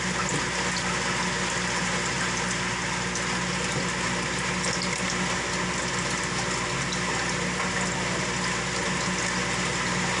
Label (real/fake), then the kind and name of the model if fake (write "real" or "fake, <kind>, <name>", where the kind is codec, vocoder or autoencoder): real